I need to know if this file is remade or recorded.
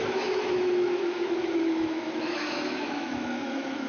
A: remade